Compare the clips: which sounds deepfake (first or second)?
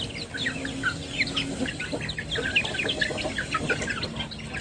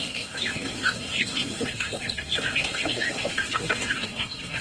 second